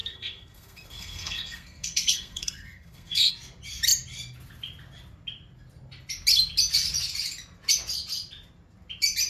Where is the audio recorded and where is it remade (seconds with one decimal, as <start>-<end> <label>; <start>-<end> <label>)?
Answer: 0.0-3.3 remade; 3.3-9.3 recorded